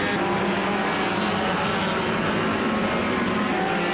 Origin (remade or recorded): recorded